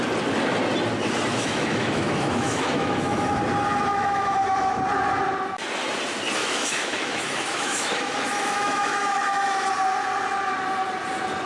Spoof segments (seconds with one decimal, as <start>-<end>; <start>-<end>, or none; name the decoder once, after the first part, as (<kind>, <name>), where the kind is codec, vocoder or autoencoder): 1.3-3.4 (autoencoder, DAC-VAE); 3.9-4.7; 6.4-9.7